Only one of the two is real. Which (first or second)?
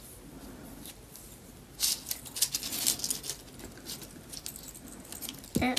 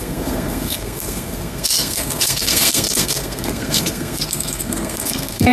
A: first